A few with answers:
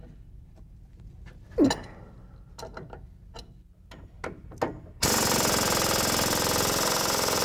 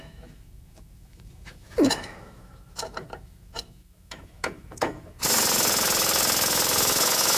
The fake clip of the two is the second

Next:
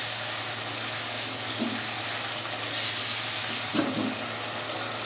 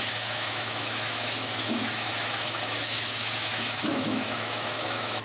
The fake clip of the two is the second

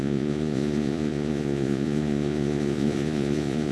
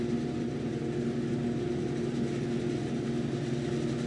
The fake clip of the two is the first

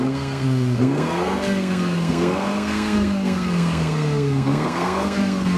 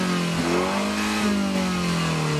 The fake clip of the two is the first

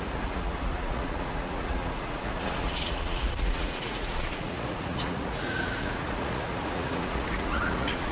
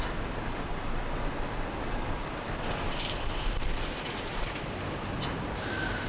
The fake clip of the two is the first